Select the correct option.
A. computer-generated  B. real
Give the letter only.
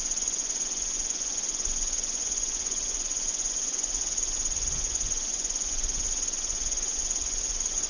A